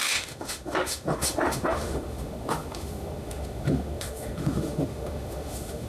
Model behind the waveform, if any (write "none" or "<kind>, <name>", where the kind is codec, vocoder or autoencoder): autoencoder, DAC-VAE